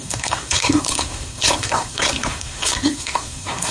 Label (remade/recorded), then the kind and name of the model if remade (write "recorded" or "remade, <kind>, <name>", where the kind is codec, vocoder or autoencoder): remade, codec, SNAC